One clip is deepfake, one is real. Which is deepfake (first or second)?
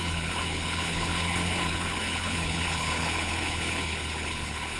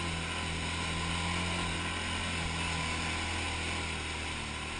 first